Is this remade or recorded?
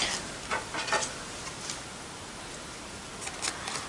recorded